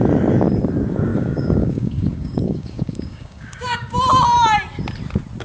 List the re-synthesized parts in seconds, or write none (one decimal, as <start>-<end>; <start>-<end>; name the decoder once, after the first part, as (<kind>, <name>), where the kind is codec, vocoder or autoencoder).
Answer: 1.1-4.0 (codec, DAC)